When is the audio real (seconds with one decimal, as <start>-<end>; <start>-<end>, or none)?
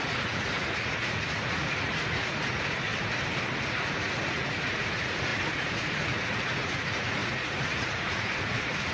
2.9-3.6